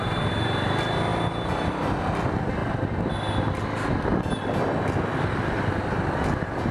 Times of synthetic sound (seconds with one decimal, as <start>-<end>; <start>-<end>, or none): none